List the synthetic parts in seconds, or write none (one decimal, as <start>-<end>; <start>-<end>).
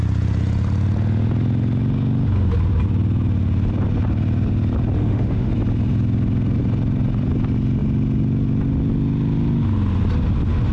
5.0-5.5